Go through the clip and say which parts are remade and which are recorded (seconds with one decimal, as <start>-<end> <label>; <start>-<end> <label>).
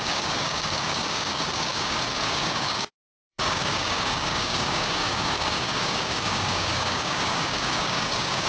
0.0-8.5 remade